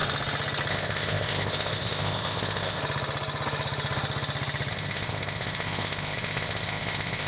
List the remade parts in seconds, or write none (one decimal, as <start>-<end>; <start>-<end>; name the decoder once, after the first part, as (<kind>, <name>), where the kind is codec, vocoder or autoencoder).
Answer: 0.7-2.8 (codec, ZipCodec); 4.7-7.3